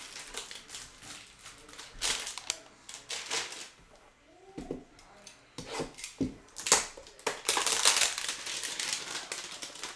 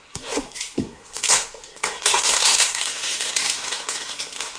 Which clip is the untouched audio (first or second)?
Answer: first